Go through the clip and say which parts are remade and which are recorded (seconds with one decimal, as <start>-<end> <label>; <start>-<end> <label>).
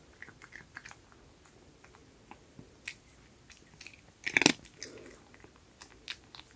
0.0-6.6 recorded